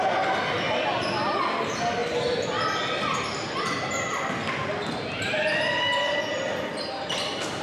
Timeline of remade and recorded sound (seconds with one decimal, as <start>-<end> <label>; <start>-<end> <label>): 0.0-7.6 recorded